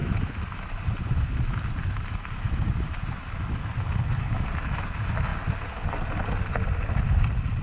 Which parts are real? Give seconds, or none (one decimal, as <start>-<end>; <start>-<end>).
0.0-7.6